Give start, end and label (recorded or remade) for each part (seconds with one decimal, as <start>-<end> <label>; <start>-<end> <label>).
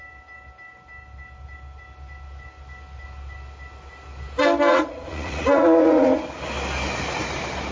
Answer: 0.0-4.7 recorded; 4.7-6.2 remade; 6.2-7.7 recorded